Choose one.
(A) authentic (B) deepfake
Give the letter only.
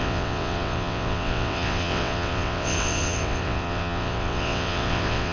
B